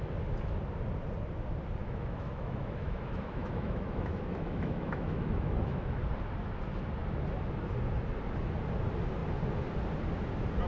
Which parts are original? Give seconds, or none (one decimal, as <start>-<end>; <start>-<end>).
0.0-1.8; 6.0-10.7